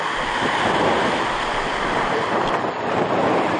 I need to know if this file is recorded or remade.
recorded